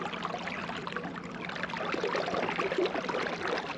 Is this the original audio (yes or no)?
yes